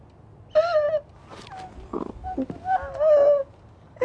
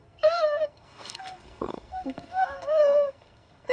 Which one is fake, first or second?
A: second